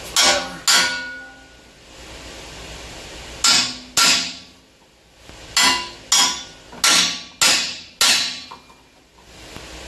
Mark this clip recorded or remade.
recorded